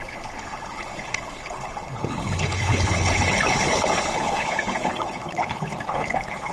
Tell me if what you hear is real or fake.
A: fake